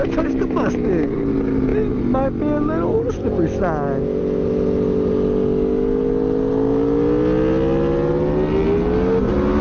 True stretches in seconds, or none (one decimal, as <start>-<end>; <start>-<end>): 0.0-9.6